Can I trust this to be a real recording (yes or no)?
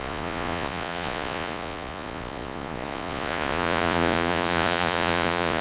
no